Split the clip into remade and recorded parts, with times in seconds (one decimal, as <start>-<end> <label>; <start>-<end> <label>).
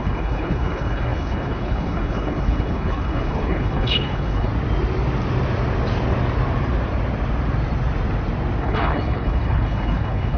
0.0-4.5 remade; 4.5-8.6 recorded; 8.6-10.4 remade